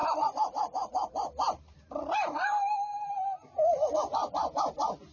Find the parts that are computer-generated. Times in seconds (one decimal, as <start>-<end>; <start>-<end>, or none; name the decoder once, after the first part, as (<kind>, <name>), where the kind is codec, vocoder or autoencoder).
0.0-3.1 (vocoder, BigVGAN v2)